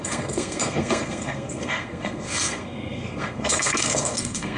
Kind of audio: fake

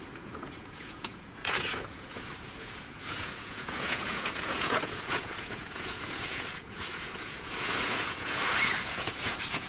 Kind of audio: fake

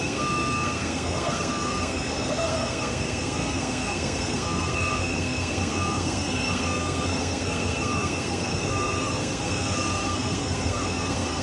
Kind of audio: fake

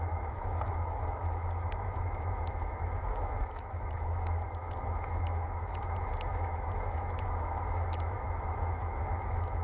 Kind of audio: fake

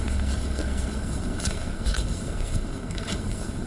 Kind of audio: fake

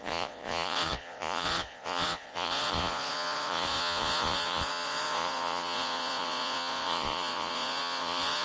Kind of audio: fake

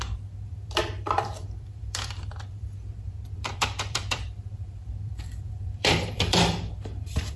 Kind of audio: fake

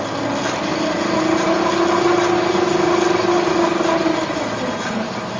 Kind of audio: real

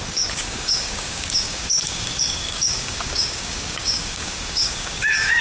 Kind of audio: fake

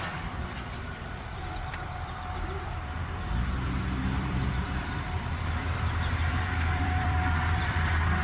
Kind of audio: fake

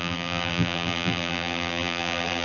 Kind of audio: fake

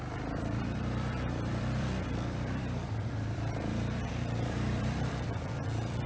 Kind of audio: fake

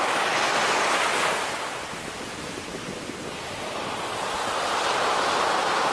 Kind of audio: real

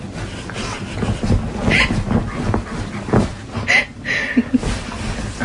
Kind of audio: real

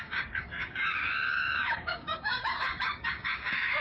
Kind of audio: fake